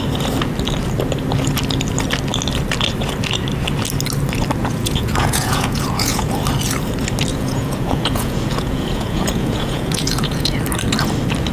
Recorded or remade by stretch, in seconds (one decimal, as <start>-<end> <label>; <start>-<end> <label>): 0.0-4.6 recorded; 4.6-6.3 remade; 6.3-7.3 recorded; 7.3-10.6 remade; 10.6-11.5 recorded